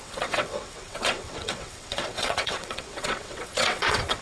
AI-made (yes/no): yes